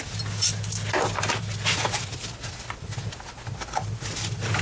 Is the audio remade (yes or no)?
no